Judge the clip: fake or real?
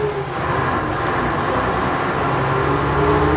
real